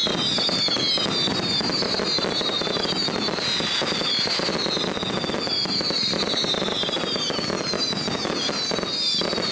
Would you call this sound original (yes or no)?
yes